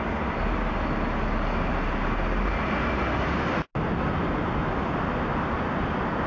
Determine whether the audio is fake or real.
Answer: real